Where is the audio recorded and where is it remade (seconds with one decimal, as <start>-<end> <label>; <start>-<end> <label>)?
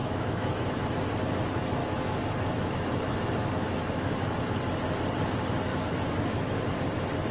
0.0-0.9 remade; 0.9-1.8 recorded; 1.8-4.4 remade; 4.4-5.7 recorded; 5.7-6.7 remade; 6.7-7.3 recorded